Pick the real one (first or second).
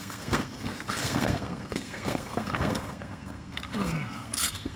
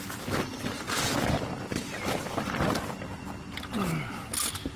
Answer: second